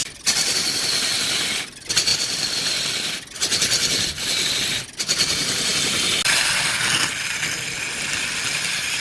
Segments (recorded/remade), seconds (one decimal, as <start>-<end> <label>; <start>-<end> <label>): 0.0-9.0 recorded